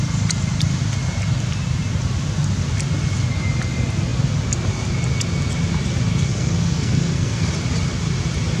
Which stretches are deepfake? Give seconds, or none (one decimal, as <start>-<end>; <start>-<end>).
6.1-7.5